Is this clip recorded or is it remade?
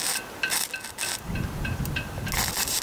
recorded